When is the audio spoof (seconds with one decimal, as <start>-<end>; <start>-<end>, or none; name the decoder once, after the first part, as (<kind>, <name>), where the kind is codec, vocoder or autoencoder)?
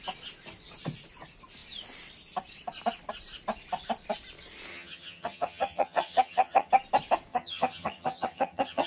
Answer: 4.7-6.7 (vocoder, HiFi-GAN); 7.3-8.9